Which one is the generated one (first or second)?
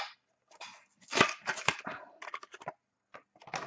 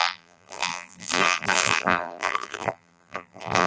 second